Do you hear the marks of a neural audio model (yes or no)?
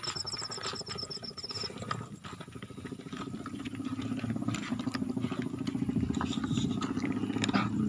no